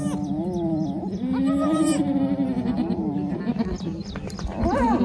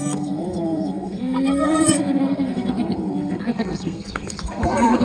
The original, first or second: first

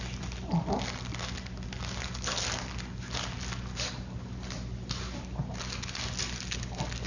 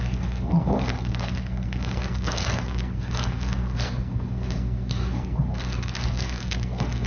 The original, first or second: first